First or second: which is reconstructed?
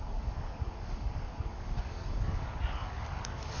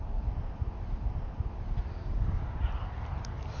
first